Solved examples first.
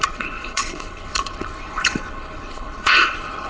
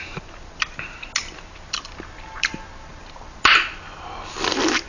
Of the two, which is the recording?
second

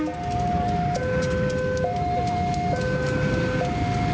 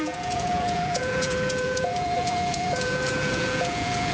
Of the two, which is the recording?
first